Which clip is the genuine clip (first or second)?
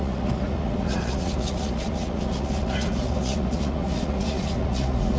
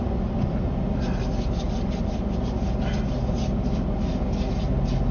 second